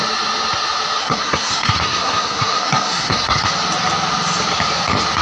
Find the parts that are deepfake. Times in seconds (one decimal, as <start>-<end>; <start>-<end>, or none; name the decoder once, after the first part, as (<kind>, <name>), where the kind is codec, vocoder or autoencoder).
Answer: 1.0-3.5 (codec, SNAC)